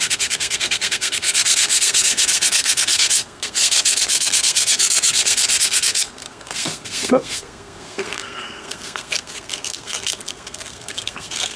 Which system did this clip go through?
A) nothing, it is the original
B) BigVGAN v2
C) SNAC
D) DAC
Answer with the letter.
C